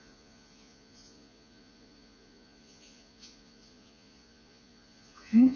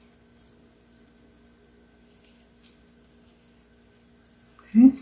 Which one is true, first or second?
second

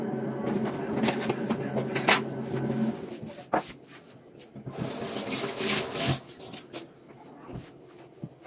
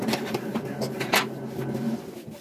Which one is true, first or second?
first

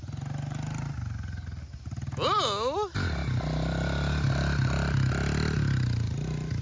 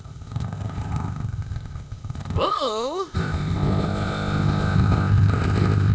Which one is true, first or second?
first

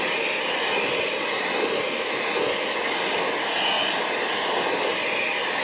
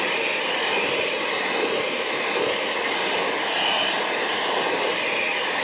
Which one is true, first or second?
first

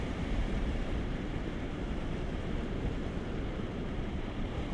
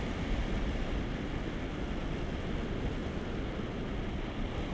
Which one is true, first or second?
second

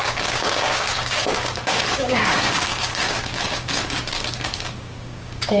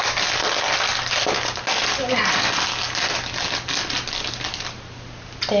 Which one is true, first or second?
second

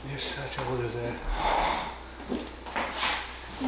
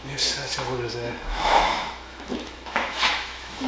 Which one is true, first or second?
first